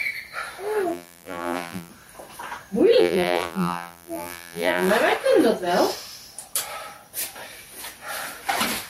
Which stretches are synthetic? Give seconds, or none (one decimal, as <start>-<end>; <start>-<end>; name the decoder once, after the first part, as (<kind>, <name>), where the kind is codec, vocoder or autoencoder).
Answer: 0.9-1.9 (vocoder, BigVGAN v2); 3.0-4.9